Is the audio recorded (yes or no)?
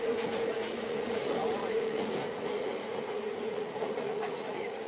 no